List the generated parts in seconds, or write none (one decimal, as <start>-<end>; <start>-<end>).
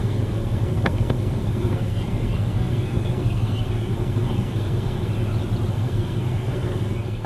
0.0-5.1; 5.7-7.3